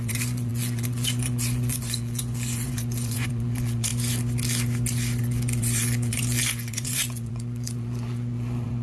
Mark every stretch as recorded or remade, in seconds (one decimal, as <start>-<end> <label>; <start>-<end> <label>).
0.0-3.9 remade; 3.9-5.2 recorded; 5.2-8.8 remade